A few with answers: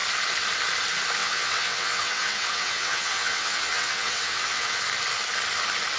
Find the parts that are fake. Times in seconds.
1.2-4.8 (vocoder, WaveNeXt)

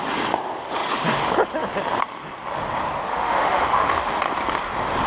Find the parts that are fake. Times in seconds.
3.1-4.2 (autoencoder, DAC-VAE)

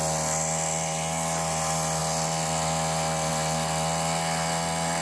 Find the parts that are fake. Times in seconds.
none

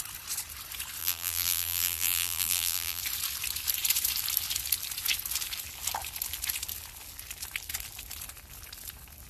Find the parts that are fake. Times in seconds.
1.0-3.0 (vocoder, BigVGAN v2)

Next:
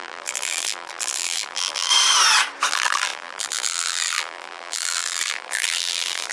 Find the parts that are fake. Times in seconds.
0.0-1.9 (vocoder, BigVGAN v2); 2.7-6.3

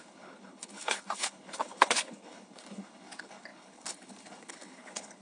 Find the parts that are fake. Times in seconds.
0.0-5.2 (codec, HILCodec)

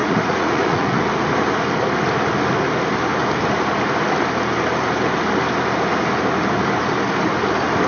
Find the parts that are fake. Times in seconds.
0.0-1.0 (vocoder, Vocos)